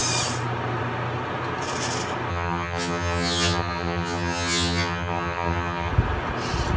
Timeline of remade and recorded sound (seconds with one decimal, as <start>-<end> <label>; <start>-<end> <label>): 0.0-2.3 recorded; 2.3-5.9 remade; 5.9-6.8 recorded